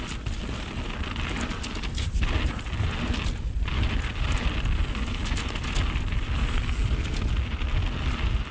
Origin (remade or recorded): recorded